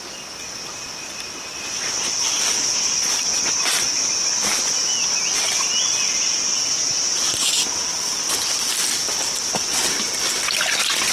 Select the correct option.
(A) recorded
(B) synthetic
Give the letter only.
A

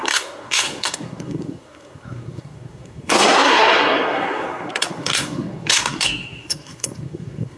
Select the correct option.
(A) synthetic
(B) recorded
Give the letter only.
A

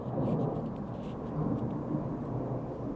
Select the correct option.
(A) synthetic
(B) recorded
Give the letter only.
B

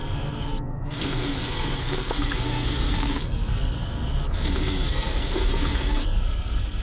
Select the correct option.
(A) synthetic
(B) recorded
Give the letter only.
A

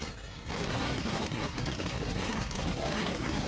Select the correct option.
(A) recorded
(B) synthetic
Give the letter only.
B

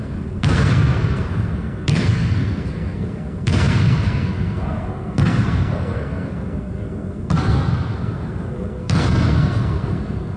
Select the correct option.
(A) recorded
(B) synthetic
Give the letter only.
B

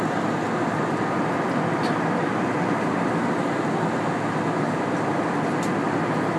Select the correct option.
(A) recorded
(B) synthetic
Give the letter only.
A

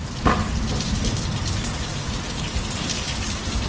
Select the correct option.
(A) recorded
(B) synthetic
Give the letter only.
A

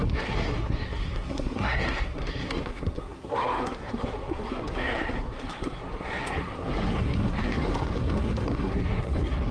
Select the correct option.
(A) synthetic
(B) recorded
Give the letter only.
A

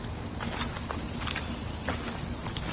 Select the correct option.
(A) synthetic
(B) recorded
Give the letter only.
B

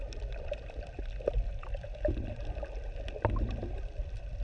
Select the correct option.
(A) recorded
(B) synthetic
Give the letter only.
A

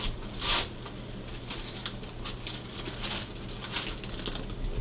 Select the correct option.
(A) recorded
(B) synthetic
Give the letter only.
A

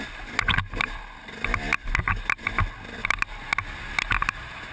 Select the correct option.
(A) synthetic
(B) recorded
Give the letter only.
B